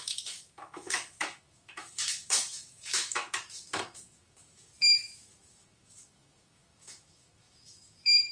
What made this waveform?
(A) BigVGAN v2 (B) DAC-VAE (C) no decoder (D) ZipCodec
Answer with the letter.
B